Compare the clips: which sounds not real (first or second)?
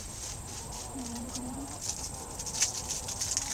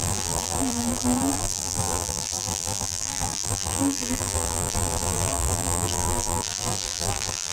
second